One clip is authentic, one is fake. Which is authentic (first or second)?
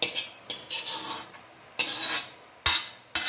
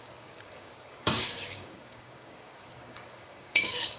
first